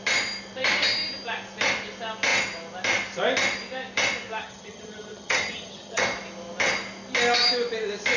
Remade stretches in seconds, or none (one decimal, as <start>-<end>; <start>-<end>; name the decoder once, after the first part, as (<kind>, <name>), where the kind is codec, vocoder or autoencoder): 4.4-6.0 (vocoder, HiFi-GAN)